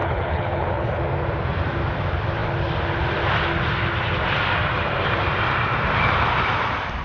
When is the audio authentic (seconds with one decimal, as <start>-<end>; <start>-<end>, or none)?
1.0-7.0